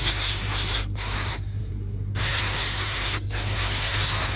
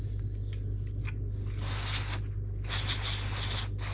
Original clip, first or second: second